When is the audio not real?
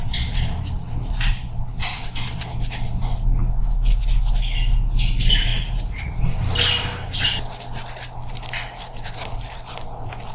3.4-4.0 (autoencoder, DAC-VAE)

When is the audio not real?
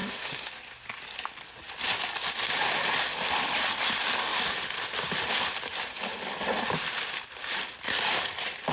0.0-0.5 (autoencoder, DAC-VAE)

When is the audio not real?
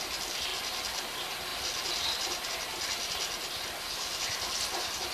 none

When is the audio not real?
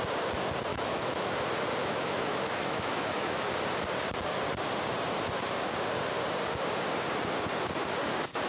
0.7-1.3 (autoencoder, DAC-VAE); 1.8-3.5